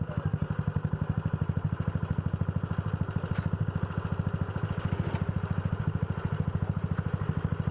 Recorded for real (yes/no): yes